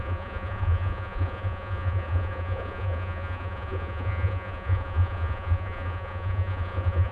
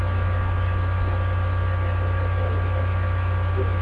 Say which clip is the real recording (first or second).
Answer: second